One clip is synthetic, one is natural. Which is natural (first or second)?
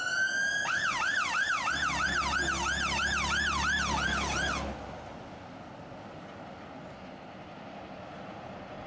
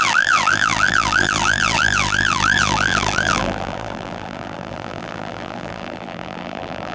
first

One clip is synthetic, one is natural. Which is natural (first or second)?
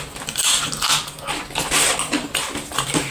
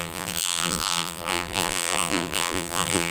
first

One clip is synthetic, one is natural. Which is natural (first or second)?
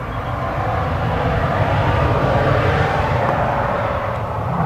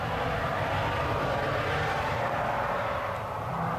second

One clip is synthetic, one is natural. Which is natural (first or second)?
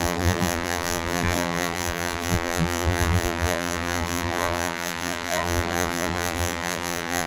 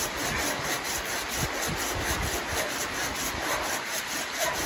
second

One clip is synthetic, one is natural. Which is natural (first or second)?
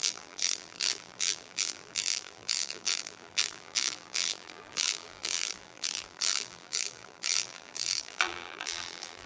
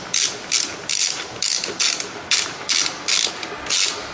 second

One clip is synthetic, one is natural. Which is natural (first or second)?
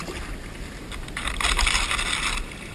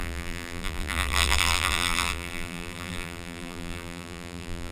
first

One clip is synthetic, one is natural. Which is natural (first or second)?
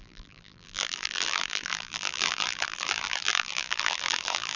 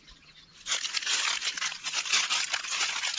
second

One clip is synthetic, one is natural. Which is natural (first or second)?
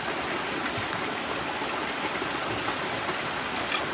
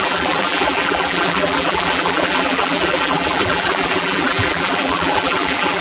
first